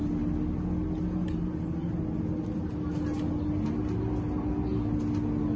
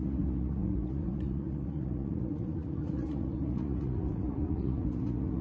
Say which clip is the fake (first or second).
second